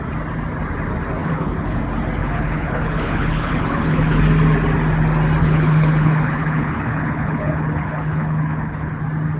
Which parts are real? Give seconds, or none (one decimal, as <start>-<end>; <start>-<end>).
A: 0.0-1.2; 1.8-2.2; 4.2-5.4; 9.0-9.4